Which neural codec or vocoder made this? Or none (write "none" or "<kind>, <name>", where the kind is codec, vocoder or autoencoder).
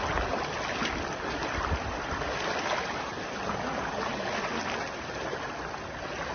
none